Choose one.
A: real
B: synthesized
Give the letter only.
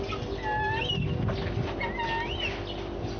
A